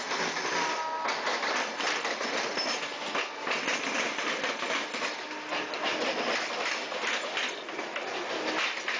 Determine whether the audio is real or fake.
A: real